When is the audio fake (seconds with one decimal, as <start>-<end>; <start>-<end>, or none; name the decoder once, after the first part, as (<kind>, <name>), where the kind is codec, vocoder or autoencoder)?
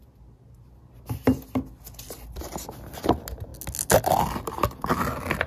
none